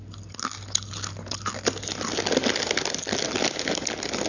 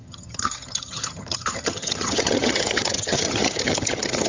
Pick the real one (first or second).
first